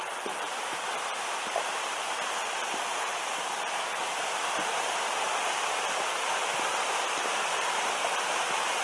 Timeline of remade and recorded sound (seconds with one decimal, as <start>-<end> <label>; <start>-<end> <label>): 0.0-3.1 remade; 3.1-4.0 recorded; 4.0-8.8 remade